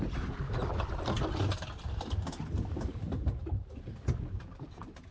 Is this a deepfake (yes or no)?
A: no